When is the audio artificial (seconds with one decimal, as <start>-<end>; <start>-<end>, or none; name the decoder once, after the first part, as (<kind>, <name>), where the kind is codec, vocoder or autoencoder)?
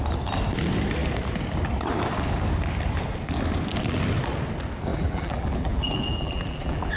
4.9-7.0 (vocoder, BigVGAN v2)